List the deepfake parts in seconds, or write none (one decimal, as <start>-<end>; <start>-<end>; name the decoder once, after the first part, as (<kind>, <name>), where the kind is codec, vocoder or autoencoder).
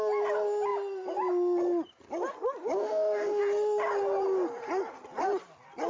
2.8-3.4 (autoencoder, DAC-VAE)